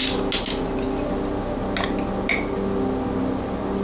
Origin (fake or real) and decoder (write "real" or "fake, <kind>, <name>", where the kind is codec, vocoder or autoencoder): real